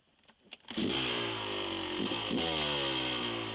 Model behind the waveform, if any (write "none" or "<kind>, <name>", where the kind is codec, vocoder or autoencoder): none